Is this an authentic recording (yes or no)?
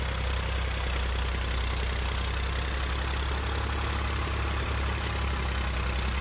yes